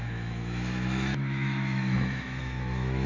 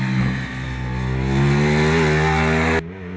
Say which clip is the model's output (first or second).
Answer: first